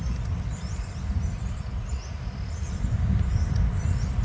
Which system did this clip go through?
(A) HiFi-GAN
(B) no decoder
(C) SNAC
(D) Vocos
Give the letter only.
B